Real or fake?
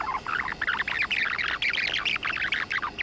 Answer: real